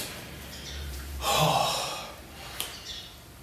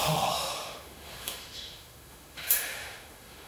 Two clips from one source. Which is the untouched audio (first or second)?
first